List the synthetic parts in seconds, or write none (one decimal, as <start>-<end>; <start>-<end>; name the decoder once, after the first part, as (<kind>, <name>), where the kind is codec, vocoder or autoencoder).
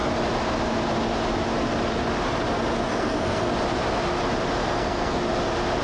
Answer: 2.9-3.5 (codec, SNAC); 4.6-5.2